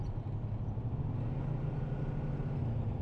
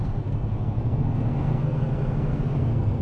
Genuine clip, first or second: first